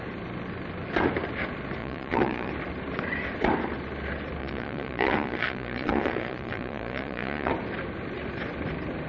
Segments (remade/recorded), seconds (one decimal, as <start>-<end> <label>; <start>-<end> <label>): 0.0-1.8 recorded; 1.8-2.5 remade; 2.5-4.4 recorded; 4.4-7.5 remade; 7.5-9.1 recorded